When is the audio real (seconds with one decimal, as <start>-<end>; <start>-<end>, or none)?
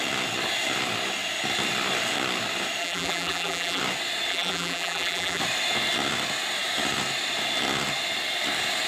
0.0-2.8; 3.8-4.3; 5.4-8.9